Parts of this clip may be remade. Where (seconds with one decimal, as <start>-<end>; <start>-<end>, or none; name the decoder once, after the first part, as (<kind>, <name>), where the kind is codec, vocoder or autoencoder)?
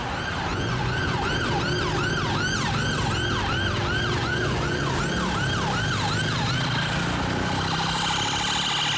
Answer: 0.5-1.3 (vocoder, Vocos); 4.2-5.0